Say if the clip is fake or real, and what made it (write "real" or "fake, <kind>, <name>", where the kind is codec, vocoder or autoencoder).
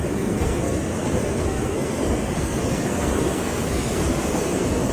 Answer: fake, codec, SNAC